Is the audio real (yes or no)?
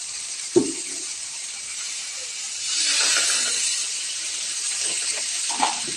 no